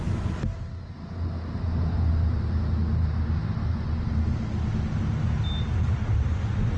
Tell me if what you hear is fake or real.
real